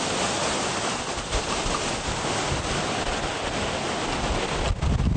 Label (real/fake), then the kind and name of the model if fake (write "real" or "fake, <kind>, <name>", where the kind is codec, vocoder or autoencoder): real